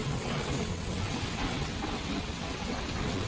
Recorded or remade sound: remade